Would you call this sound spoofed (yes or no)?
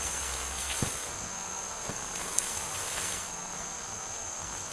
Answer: yes